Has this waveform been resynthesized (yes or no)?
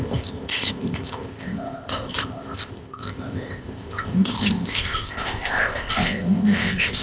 yes